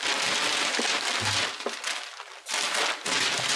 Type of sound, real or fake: real